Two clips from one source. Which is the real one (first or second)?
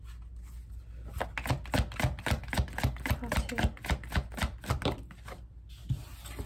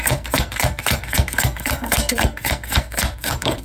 first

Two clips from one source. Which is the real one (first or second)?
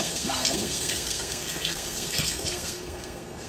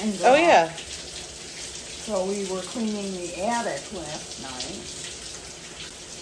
second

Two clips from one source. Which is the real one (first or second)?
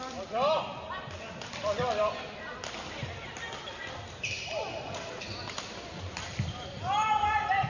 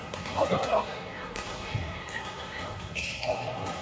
first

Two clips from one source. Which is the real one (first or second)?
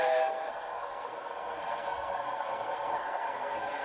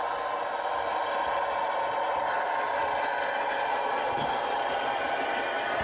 second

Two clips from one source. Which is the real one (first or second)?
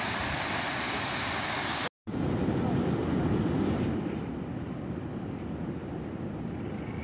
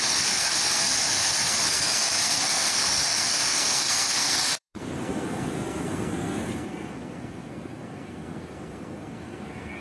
first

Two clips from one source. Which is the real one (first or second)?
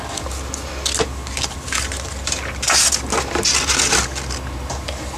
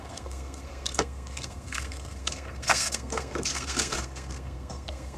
first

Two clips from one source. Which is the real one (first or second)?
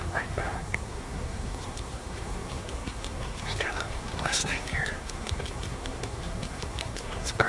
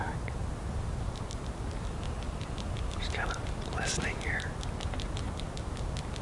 second